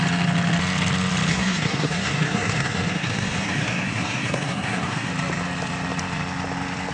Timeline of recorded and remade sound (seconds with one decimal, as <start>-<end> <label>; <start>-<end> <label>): 0.0-1.3 recorded; 1.3-5.1 remade; 5.1-6.9 recorded